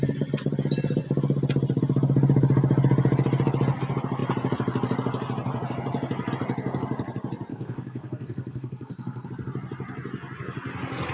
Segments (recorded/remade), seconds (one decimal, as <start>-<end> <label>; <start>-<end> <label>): 0.0-7.5 recorded; 7.5-9.3 remade; 9.3-11.1 recorded